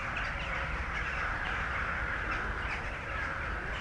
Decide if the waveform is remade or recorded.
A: recorded